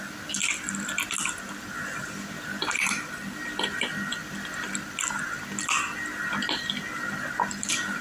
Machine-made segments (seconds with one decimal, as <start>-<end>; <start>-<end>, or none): none